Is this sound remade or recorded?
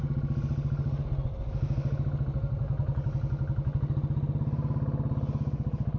recorded